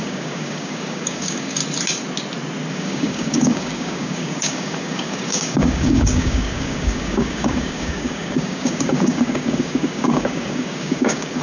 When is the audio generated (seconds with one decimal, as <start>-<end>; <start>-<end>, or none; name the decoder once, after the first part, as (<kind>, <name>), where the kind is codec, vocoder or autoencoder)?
0.0-1.6 (codec, DAC); 2.7-11.4